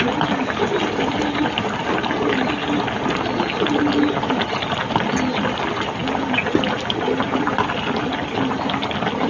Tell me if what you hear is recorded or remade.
recorded